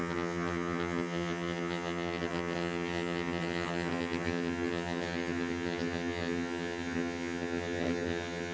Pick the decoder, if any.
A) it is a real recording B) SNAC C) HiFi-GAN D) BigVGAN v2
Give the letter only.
C